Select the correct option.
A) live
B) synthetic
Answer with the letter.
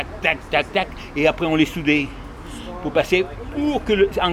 A